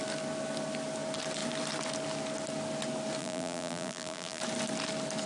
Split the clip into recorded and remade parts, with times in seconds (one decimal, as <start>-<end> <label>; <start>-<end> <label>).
0.0-3.2 recorded; 3.2-4.4 remade; 4.4-5.3 recorded